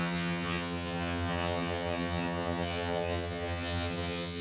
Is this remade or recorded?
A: remade